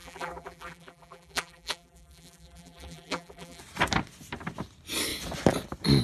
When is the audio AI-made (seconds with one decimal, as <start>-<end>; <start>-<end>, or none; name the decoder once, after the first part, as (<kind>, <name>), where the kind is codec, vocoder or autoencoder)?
0.0-3.6 (vocoder, BigVGAN v2)